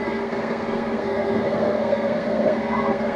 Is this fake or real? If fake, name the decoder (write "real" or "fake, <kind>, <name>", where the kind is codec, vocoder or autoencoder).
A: fake, codec, SNAC